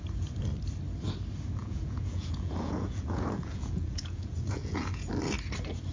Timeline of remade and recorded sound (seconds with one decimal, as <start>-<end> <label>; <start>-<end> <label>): 0.0-1.6 recorded; 1.6-5.1 remade; 5.1-5.9 recorded

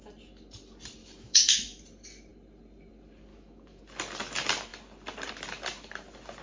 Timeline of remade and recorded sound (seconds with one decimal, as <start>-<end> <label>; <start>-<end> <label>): 0.0-1.0 recorded; 1.0-1.8 remade; 1.8-3.3 recorded; 3.3-3.8 remade; 3.8-6.4 recorded

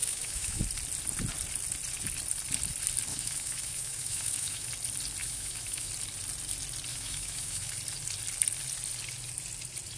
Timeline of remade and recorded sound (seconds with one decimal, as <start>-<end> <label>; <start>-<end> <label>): 0.0-0.6 remade; 0.6-3.1 recorded; 3.1-4.7 remade; 4.7-5.2 recorded; 5.2-5.9 remade; 5.9-6.9 recorded; 6.9-7.7 remade; 7.7-10.0 recorded

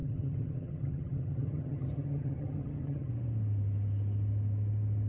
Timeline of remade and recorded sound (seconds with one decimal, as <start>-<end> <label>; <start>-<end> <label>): 0.0-3.1 remade; 3.1-5.1 recorded

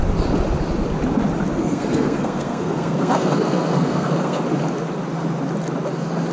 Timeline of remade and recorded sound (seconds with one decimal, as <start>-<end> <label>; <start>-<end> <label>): 0.0-1.6 recorded; 1.6-4.4 remade; 4.4-6.3 recorded

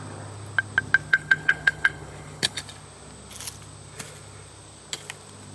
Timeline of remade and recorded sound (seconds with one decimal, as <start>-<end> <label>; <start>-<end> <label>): 0.0-1.1 recorded; 1.1-2.6 remade; 2.6-5.5 recorded

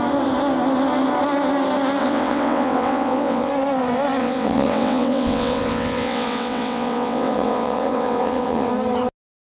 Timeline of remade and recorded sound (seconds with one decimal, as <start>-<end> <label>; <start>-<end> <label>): 0.0-2.0 recorded; 2.0-3.5 remade; 3.5-4.2 recorded; 4.2-8.7 remade; 8.7-9.5 recorded

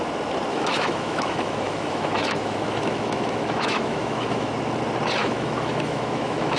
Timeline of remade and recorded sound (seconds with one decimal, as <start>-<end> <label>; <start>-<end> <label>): 0.0-0.5 recorded; 0.5-4.5 remade; 4.5-5.2 recorded; 5.2-6.6 remade